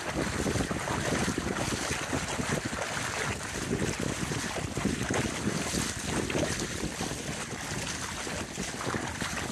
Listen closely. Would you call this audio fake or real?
real